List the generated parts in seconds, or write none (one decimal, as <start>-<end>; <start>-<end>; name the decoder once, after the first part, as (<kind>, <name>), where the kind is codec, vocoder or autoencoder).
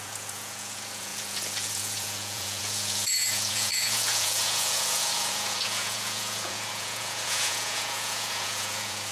0.0-9.1 (vocoder, Vocos)